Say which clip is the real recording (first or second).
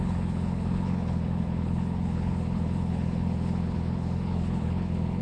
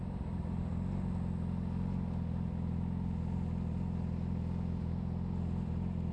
second